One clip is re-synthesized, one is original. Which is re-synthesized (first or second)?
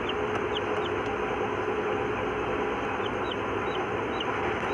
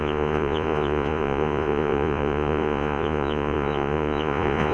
second